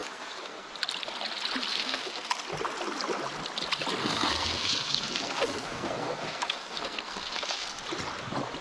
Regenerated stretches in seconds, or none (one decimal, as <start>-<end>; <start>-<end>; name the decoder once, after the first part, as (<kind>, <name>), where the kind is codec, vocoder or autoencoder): 0.0-0.7 (codec, SNAC); 1.7-2.3; 4.0-7.8